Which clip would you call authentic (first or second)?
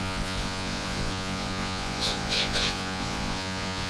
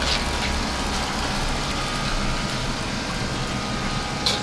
second